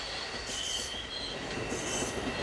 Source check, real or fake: real